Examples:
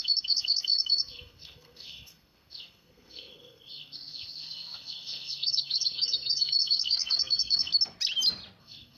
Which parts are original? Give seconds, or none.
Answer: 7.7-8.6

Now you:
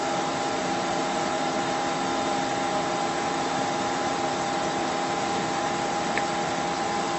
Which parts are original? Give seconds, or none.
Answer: 2.1-3.0

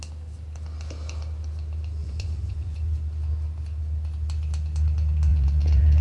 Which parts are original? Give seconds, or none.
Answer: 0.0-2.0; 3.0-5.3